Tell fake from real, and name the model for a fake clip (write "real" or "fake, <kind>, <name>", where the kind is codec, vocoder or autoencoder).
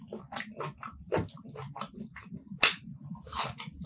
real